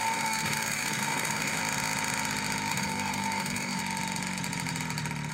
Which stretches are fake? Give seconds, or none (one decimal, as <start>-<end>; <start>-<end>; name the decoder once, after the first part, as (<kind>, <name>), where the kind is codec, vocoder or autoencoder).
0.0-1.6 (codec, DAC); 2.7-3.8